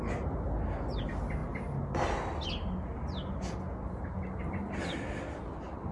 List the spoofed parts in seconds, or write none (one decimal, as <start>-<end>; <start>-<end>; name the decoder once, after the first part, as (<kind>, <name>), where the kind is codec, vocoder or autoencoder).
none